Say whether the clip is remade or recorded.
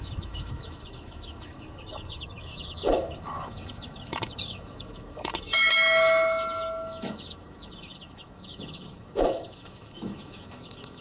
remade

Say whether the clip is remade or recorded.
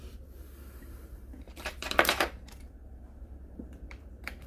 remade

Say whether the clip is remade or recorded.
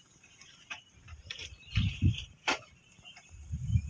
remade